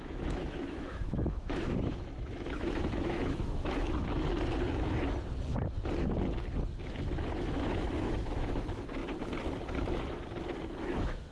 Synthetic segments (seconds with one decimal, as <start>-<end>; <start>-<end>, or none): 0.0-4.3; 7.4-9.0; 10.8-11.3